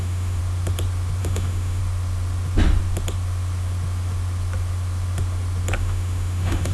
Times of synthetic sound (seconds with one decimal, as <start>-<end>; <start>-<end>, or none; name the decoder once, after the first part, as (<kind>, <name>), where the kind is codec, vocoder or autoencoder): 0.0-0.4 (autoencoder, DAC-VAE); 1.2-1.8; 5.8-6.7